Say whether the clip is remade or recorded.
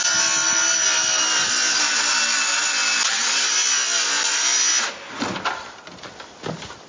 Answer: recorded